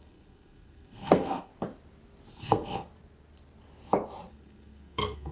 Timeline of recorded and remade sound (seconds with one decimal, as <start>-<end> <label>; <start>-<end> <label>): 0.0-1.5 remade; 1.5-2.3 recorded; 2.3-2.9 remade; 2.9-4.3 recorded; 4.3-5.3 remade